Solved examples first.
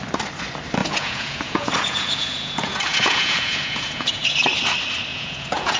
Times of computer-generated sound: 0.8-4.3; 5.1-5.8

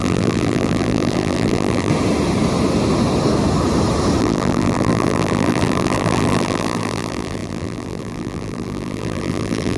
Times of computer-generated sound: 0.0-1.9; 4.2-9.8

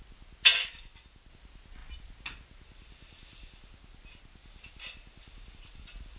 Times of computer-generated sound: none

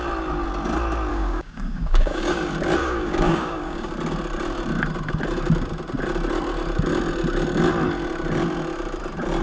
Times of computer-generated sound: 1.1-2.3; 2.8-3.9